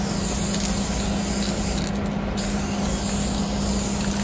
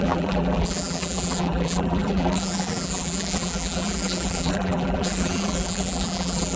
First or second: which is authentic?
first